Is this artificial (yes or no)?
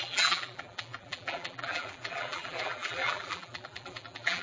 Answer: yes